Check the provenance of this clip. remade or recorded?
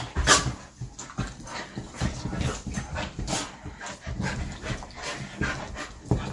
recorded